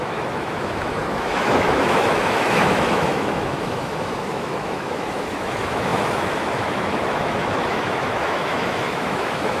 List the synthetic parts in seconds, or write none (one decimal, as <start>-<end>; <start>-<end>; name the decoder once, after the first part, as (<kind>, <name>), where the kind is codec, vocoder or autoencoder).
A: 0.0-9.6 (autoencoder, DAC-VAE)